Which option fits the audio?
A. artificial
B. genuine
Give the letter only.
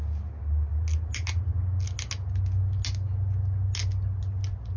B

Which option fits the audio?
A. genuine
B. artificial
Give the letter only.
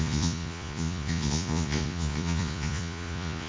B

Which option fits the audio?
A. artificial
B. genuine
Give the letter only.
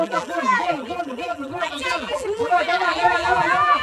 A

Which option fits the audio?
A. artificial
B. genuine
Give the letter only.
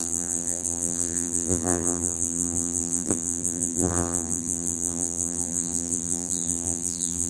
A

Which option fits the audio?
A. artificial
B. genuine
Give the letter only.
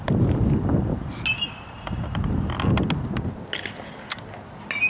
B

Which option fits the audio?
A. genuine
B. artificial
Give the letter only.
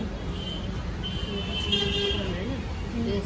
A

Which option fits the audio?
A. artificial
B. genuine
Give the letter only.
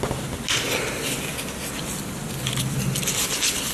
B